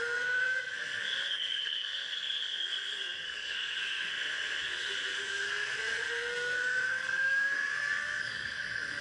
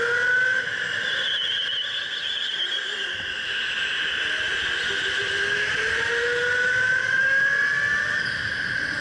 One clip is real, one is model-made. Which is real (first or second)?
second